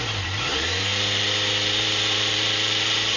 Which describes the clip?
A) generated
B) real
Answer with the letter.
A